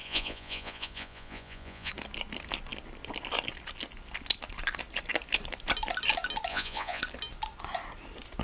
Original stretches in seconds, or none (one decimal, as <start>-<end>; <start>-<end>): 1.9-6.5; 7.0-8.4